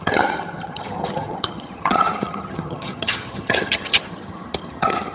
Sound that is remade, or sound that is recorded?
remade